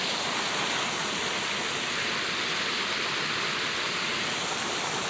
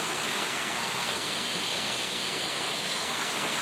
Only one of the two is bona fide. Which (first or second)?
first